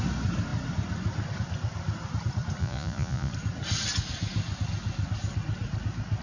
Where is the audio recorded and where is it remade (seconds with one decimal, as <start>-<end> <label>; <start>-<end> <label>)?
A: 0.0-2.6 recorded; 2.6-3.3 remade; 3.3-6.2 recorded